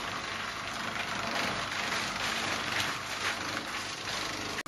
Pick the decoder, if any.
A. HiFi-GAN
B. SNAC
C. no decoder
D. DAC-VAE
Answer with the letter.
C